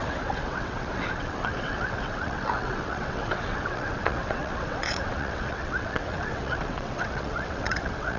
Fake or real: fake